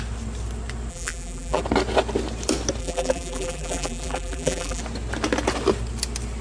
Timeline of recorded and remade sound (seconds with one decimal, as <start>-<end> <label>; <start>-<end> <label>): 0.0-0.9 recorded; 0.9-1.6 remade; 1.6-2.8 recorded; 2.8-4.8 remade; 4.8-6.4 recorded